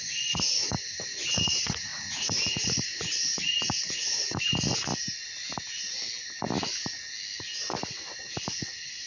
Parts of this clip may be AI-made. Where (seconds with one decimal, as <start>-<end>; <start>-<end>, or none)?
0.0-4.9; 8.6-9.1